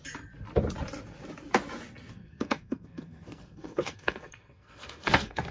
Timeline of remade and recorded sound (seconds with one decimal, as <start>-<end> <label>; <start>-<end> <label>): 0.0-2.1 recorded; 2.1-5.5 remade